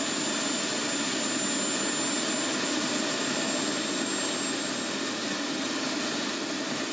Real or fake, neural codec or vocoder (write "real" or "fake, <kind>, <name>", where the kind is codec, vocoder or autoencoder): real